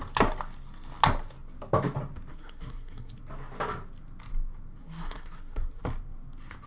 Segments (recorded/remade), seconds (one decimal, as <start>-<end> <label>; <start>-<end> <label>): 0.0-2.3 recorded; 2.3-3.2 remade; 3.2-4.8 recorded; 4.8-5.8 remade; 5.8-6.7 recorded